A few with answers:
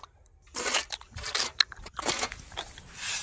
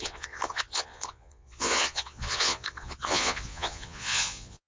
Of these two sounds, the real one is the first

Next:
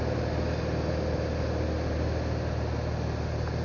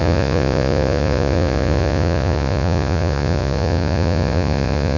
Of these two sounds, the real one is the first